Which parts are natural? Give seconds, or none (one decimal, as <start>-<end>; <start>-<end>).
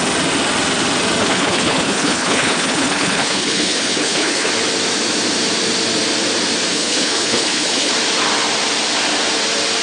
0.0-1.2; 4.5-6.7; 7.9-9.8